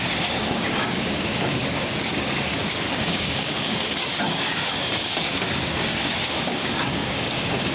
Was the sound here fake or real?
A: fake